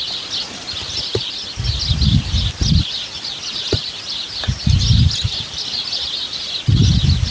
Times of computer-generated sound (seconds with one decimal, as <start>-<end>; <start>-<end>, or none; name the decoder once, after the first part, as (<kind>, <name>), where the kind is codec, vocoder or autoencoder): none